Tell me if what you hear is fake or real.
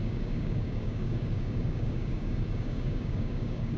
fake